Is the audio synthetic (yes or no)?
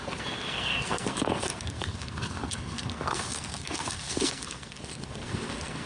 yes